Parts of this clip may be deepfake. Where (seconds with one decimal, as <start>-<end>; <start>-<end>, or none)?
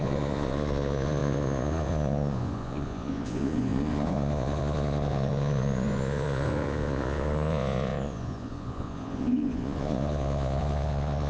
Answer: 0.0-11.3